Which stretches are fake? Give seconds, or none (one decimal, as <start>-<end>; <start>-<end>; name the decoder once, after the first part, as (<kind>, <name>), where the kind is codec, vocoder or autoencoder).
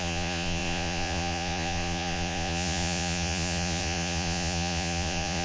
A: 0.0-5.4 (vocoder, Vocos)